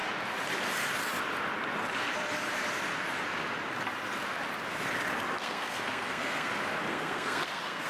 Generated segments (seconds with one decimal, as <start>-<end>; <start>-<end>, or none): 5.4-6.5; 6.9-7.9